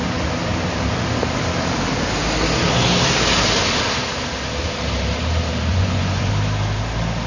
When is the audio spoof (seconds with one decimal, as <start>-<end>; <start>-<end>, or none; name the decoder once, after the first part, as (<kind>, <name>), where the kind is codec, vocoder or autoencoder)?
5.7-6.3 (vocoder, Vocos)